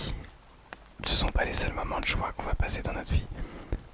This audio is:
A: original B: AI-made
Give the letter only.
A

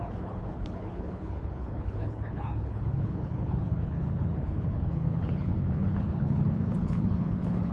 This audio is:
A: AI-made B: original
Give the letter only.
A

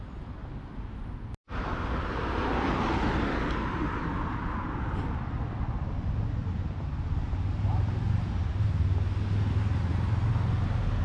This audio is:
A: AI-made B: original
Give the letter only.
B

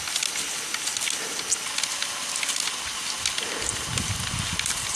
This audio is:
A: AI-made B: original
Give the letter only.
B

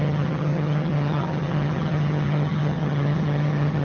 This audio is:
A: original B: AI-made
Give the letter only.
B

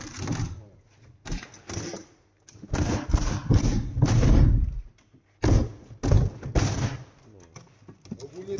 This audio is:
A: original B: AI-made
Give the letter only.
A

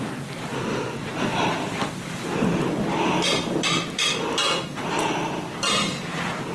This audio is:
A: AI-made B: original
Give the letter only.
B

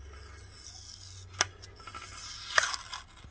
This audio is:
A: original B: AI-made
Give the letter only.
A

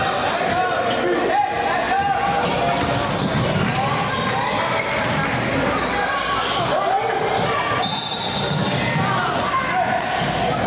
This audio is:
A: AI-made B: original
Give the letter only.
B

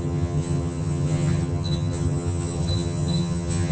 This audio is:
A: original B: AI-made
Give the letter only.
B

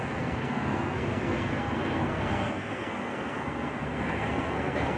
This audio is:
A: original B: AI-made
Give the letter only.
B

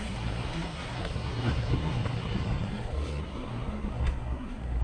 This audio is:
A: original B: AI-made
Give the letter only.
B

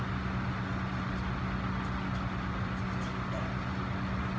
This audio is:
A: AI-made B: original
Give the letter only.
B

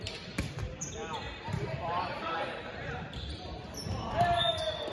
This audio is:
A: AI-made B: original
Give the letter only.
A